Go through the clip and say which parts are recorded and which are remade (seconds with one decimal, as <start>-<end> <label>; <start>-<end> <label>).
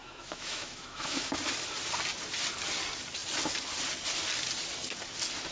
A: 0.0-1.3 remade; 1.3-5.5 recorded